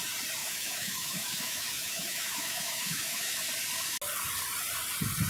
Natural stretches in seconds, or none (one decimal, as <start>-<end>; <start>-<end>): 0.0-0.4; 3.4-5.3